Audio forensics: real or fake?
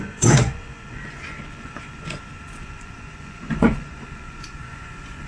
fake